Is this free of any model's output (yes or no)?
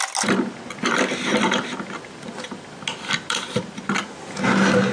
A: yes